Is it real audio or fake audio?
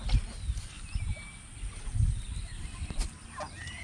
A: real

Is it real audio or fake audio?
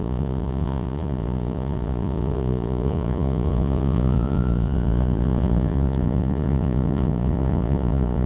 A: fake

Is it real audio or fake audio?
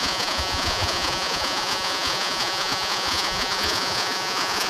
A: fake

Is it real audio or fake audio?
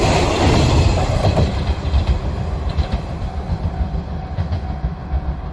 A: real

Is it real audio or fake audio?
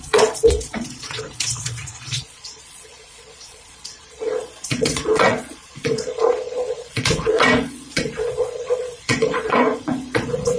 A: fake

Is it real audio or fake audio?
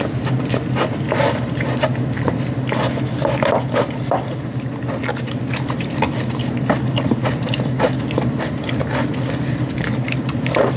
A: real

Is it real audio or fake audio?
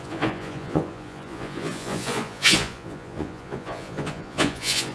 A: fake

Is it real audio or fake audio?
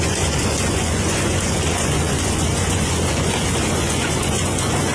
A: fake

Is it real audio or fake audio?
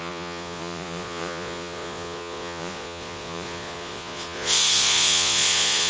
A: fake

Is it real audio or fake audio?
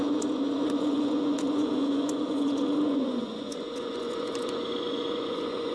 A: fake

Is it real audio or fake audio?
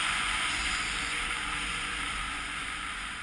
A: fake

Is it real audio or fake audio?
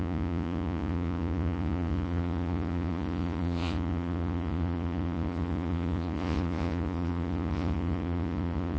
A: fake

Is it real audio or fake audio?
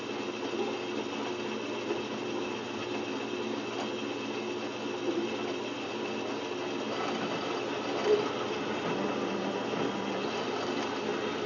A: real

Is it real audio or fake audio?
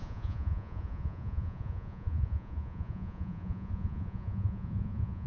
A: fake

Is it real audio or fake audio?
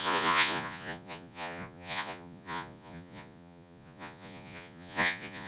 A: fake